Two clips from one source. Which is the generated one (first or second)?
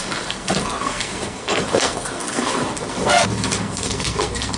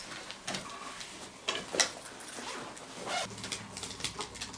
first